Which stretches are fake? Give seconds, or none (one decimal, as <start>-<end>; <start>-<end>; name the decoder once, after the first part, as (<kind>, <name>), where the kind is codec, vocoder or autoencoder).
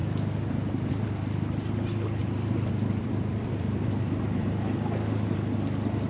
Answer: 2.2-4.6 (vocoder, BigVGAN v2)